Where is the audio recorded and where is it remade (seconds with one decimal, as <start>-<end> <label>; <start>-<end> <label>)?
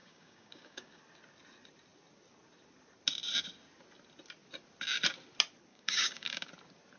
0.0-1.0 remade; 1.0-5.7 recorded; 5.7-6.5 remade; 6.5-7.0 recorded